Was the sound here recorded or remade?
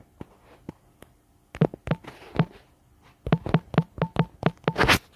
recorded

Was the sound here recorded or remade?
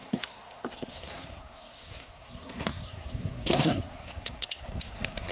remade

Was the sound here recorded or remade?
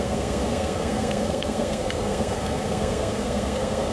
remade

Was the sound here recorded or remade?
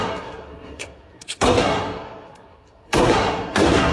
remade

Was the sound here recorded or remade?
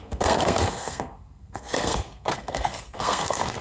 remade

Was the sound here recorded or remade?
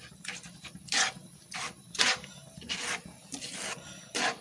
recorded